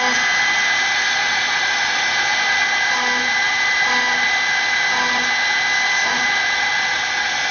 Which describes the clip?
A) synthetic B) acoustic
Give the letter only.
B